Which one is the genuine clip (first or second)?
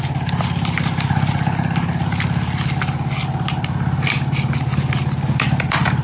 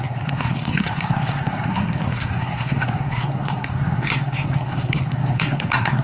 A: first